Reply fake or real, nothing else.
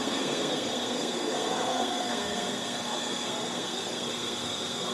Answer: fake